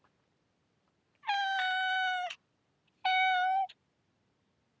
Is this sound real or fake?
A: real